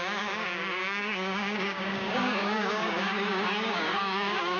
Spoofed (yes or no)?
yes